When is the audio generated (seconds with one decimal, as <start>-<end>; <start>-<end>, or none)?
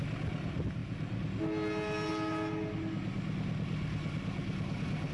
none